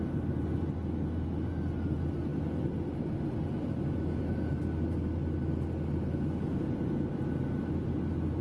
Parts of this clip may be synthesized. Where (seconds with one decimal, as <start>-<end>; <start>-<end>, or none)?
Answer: none